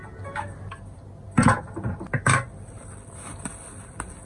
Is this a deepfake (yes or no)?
no